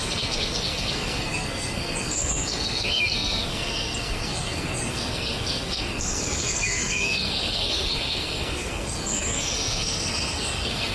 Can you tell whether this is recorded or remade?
remade